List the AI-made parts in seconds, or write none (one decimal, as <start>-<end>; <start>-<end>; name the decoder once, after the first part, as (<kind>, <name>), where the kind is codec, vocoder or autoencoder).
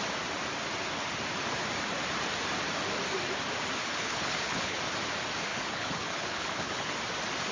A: 3.8-4.8 (codec, HILCodec); 5.5-6.9